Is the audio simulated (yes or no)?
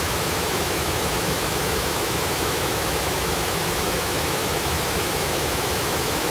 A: yes